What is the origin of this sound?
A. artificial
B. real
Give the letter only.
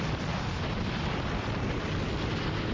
B